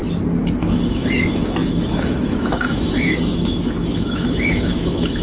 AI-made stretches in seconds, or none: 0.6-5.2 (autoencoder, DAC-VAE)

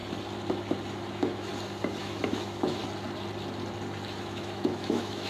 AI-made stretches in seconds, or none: 1.1-1.5 (autoencoder, DAC-VAE); 2.0-2.8; 4.2-5.3

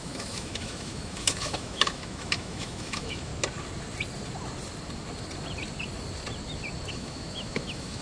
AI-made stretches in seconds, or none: 0.0-3.3 (autoencoder, DAC-VAE); 6.9-8.0